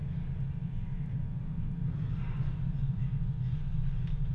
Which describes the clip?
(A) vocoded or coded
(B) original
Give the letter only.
B